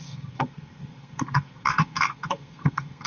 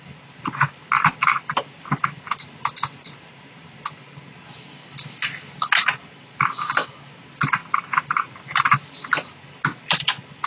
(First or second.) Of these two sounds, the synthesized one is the first